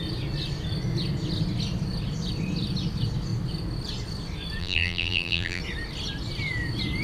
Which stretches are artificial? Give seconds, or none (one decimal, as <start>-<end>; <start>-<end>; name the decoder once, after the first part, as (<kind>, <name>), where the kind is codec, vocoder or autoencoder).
4.6-5.6 (vocoder, BigVGAN v2)